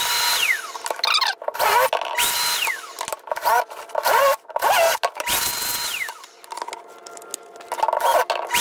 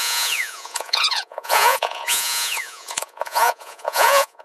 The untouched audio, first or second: first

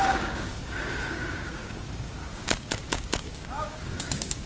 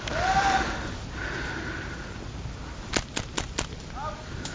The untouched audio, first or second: second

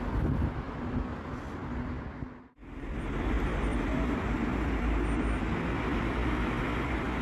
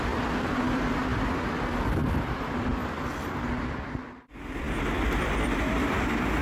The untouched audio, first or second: first